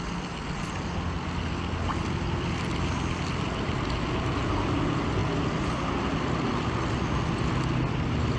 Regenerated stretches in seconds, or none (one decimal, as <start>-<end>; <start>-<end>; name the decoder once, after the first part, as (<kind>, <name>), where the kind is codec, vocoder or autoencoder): none